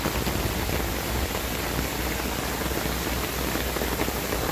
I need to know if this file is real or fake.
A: real